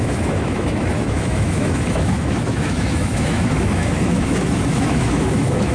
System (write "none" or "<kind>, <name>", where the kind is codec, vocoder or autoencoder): autoencoder, DAC-VAE